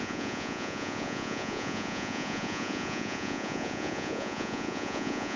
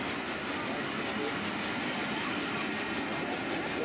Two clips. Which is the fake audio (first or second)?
first